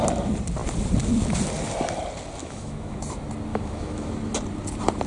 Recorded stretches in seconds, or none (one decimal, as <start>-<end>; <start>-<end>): 0.0-2.4; 3.0-3.5; 4.1-5.1